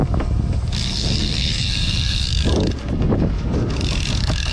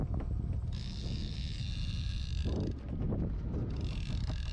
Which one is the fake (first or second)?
first